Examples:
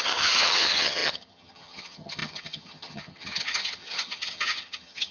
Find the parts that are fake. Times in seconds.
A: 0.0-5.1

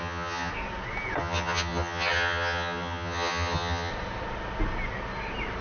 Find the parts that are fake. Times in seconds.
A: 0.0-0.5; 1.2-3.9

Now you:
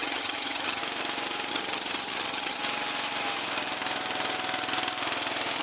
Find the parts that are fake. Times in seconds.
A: 0.0-0.8; 1.5-2.6

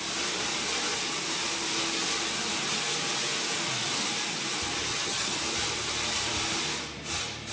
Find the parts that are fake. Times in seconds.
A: 4.9-5.4